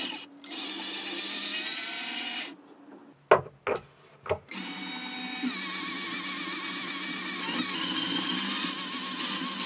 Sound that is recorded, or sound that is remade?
recorded